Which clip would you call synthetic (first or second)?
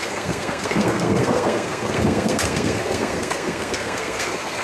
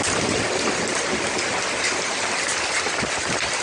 first